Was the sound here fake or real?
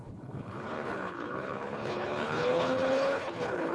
fake